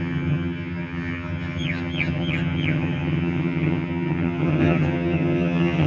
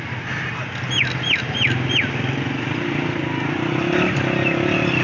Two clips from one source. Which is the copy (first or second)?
first